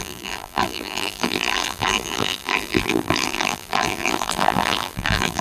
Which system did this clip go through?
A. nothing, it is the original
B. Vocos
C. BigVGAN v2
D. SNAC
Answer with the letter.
C